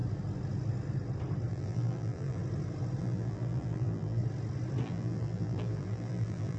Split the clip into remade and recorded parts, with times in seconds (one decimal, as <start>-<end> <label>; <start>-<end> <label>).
0.0-1.5 recorded; 1.5-2.4 remade; 2.4-3.0 recorded; 3.0-4.2 remade; 4.2-4.8 recorded; 4.8-6.6 remade